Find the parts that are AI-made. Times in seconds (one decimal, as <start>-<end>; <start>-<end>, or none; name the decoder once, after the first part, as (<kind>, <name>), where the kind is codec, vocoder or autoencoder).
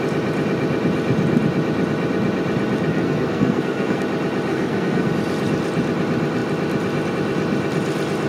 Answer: 2.9-4.0 (codec, SNAC); 4.5-5.1